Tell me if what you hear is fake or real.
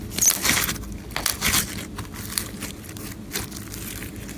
real